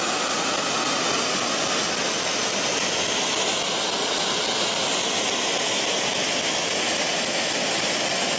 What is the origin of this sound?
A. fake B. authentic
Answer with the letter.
B